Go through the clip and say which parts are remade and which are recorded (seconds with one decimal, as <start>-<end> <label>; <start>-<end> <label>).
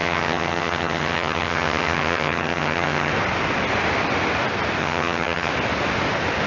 0.0-3.1 remade; 3.1-4.8 recorded; 4.8-5.5 remade; 5.5-6.5 recorded